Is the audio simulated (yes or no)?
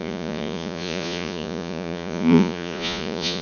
yes